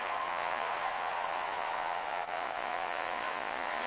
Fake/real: fake